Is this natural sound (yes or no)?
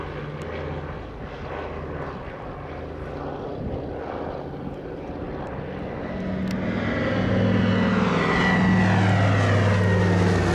yes